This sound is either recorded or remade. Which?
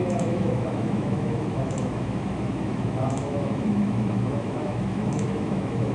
remade